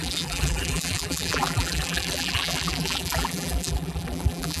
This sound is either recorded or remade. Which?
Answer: remade